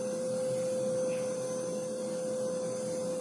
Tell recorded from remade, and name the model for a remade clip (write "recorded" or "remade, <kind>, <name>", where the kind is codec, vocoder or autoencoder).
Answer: recorded